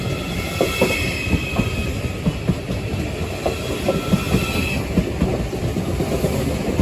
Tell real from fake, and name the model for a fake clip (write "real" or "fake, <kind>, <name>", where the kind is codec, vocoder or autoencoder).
real